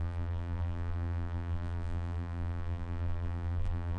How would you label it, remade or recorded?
remade